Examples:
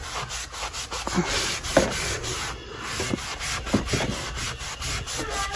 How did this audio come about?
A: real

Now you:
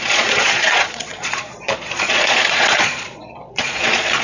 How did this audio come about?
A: fake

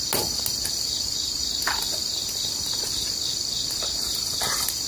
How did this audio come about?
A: real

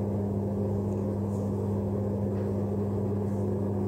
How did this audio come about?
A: real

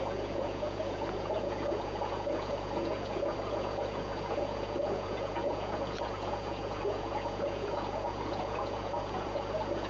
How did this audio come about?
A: fake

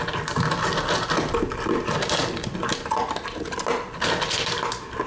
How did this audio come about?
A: real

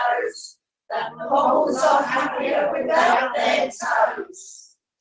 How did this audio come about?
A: real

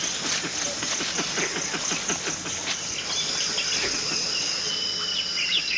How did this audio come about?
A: real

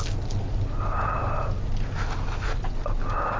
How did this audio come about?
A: real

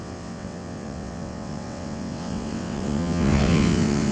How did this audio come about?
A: fake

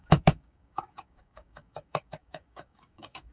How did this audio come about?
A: fake